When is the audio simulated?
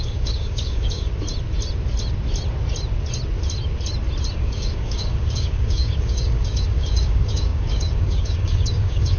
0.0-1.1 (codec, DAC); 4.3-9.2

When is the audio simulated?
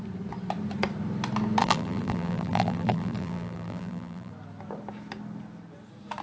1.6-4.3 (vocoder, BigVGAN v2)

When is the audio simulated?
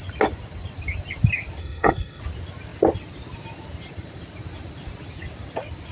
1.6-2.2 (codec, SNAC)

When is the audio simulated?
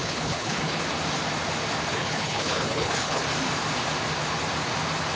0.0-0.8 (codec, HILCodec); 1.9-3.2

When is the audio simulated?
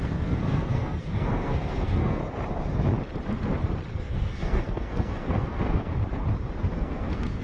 0.0-2.2 (codec, SNAC); 4.0-5.9; 6.6-7.4